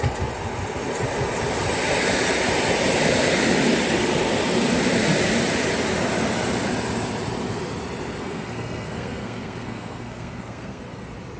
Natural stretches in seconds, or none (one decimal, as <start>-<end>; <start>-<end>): 0.0-8.2; 10.8-11.4